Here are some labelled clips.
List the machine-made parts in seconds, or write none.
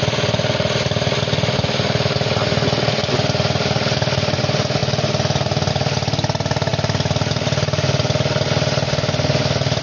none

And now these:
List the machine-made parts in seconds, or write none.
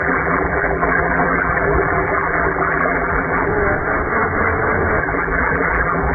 0.0-3.5 (vocoder, BigVGAN v2); 5.0-6.1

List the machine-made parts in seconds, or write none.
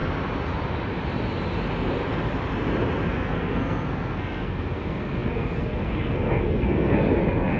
3.1-7.6 (codec, SNAC)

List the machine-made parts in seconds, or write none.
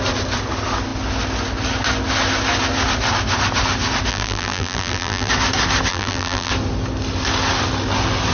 4.1-5.3 (vocoder, BigVGAN v2); 5.9-6.5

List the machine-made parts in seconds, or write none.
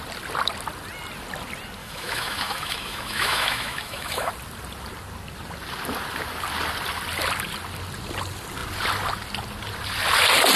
1.8-4.3 (autoencoder, DAC-VAE)